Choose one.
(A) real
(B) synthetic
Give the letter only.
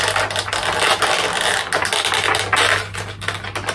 A